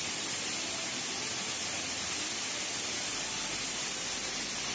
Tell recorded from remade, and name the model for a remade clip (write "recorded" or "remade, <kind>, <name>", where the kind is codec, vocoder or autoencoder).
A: recorded